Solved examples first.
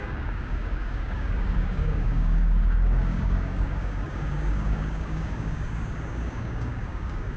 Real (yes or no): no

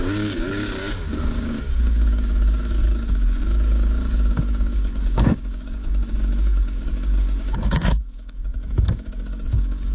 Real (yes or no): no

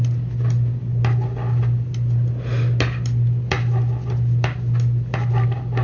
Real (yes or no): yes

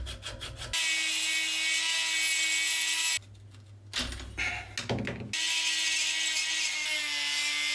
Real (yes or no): yes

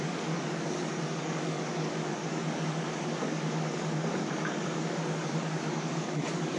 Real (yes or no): no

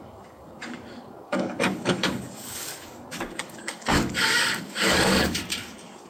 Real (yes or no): no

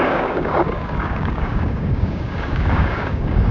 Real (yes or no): no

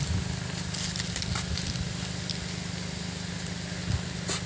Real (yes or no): yes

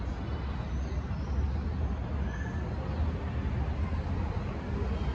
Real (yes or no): yes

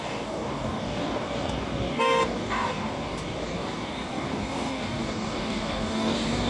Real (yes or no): no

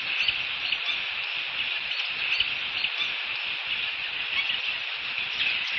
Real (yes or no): yes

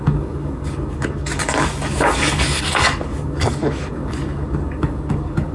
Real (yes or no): no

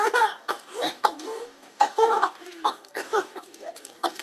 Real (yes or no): no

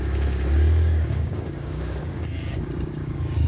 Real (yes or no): no